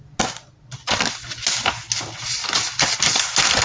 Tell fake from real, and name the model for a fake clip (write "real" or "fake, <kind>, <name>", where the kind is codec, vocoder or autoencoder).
real